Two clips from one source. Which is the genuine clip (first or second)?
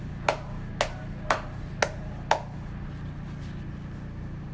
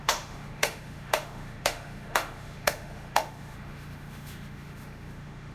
first